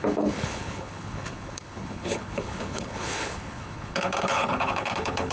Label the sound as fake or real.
fake